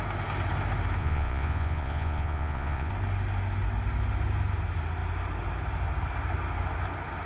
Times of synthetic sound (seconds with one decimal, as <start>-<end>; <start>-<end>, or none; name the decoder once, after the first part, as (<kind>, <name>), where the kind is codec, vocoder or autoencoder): 1.0-2.9 (vocoder, Vocos)